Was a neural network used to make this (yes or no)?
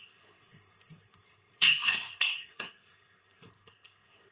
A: yes